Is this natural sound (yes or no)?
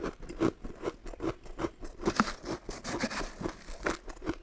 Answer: yes